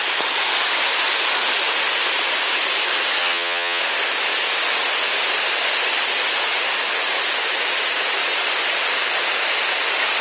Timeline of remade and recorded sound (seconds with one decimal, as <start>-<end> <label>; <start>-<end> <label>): 0.0-3.2 recorded; 3.2-3.8 remade; 3.8-10.2 recorded